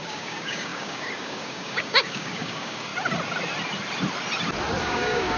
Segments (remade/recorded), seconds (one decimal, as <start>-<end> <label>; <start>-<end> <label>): 0.0-2.9 remade; 2.9-4.8 recorded; 4.8-5.4 remade